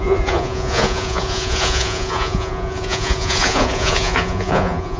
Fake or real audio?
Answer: fake